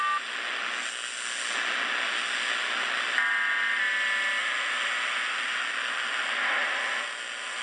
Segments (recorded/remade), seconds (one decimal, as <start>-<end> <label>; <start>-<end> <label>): 0.0-7.6 recorded